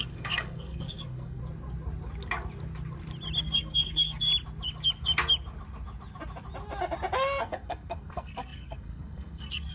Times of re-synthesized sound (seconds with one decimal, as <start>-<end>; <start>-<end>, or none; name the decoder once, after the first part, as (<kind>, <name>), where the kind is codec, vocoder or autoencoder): 0.0-1.4 (codec, SNAC); 3.4-4.3; 7.4-9.7